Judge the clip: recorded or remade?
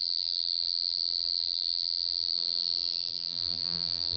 remade